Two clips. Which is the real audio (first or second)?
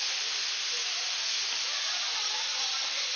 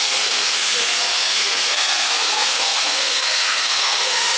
first